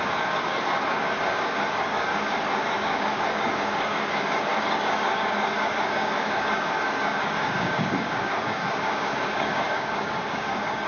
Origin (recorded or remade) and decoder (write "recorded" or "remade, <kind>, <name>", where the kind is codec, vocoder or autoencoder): remade, codec, DAC